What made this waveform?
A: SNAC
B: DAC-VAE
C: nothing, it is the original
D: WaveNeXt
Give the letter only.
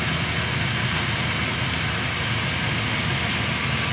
C